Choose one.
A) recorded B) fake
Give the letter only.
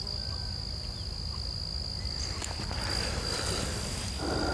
A